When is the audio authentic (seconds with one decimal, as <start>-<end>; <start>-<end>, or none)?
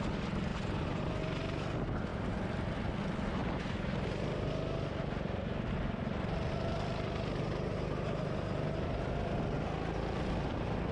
0.0-0.5; 1.4-10.9